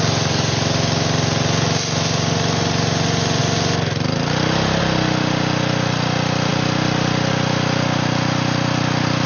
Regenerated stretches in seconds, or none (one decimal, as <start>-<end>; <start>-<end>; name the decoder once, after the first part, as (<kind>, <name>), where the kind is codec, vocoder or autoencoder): none